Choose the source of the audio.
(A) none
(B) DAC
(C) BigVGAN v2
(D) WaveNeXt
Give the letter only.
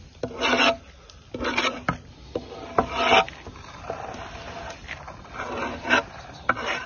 A